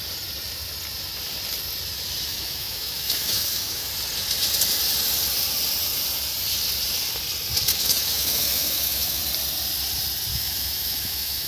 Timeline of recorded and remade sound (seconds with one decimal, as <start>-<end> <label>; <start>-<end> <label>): 0.0-2.3 recorded; 2.3-3.9 remade; 3.9-7.7 recorded; 7.7-9.2 remade; 9.2-10.3 recorded; 10.3-11.5 remade